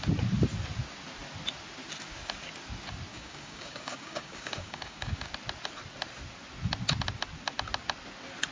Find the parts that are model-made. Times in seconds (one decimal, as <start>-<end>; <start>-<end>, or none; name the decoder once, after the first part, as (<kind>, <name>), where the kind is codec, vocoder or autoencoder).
3.1-5.3 (codec, DAC)